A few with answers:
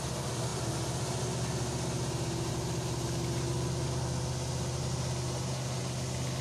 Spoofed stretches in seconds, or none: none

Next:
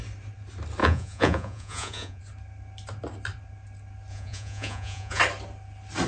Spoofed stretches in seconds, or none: 0.8-2.2; 4.1-5.2